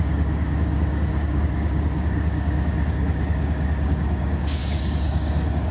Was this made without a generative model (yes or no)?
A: no